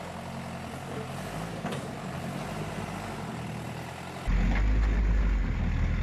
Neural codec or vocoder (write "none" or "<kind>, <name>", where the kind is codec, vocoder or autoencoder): none